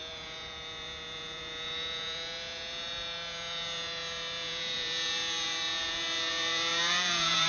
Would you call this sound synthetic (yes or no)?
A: yes